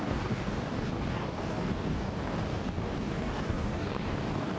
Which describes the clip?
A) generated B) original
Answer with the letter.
A